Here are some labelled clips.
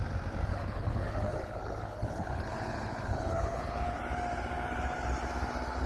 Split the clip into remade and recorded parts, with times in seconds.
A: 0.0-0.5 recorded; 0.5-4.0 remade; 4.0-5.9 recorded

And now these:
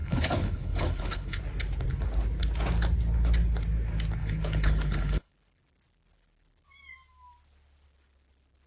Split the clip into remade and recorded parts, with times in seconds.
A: 0.0-1.4 remade; 1.4-4.2 recorded; 4.2-5.3 remade; 5.3-8.7 recorded

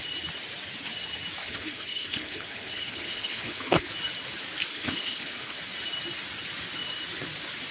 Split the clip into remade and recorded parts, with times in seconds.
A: 0.0-1.4 recorded; 1.4-3.9 remade; 3.9-4.7 recorded; 4.7-5.6 remade; 5.6-7.7 recorded

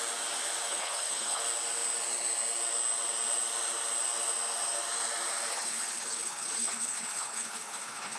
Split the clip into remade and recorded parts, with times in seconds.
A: 0.0-0.7 recorded; 0.7-1.4 remade; 1.4-5.5 recorded; 5.5-8.2 remade

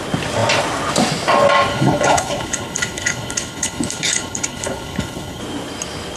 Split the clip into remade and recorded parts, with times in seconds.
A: 0.0-1.7 recorded; 1.7-5.4 remade; 5.4-6.2 recorded

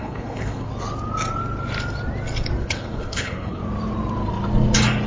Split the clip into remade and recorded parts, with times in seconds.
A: 0.0-0.7 remade; 0.7-2.6 recorded; 2.6-3.6 remade; 3.6-5.1 recorded